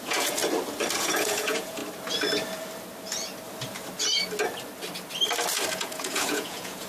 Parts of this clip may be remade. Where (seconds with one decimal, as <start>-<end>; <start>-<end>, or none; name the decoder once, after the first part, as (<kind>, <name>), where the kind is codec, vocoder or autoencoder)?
0.0-0.4 (vocoder, Vocos); 1.0-1.8; 5.7-6.9